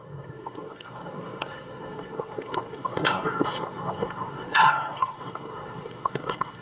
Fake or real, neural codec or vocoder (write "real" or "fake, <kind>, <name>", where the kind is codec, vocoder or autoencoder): fake, codec, SNAC